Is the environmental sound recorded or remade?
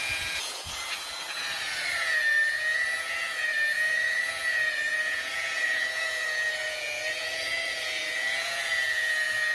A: remade